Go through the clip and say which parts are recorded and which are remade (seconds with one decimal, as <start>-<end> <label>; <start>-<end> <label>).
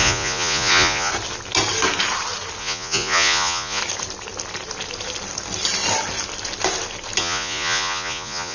0.0-1.1 remade; 1.1-2.6 recorded; 2.6-3.8 remade; 3.8-7.2 recorded; 7.2-8.5 remade